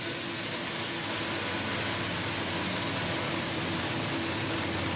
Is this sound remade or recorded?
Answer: recorded